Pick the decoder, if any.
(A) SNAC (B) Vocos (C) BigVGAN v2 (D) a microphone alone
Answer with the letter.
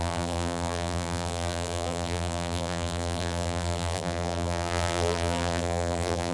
C